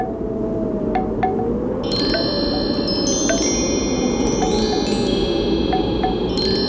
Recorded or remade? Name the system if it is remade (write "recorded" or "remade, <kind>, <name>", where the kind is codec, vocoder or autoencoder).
recorded